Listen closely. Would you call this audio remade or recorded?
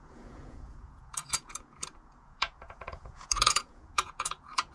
remade